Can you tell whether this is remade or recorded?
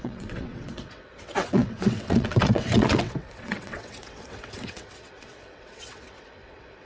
remade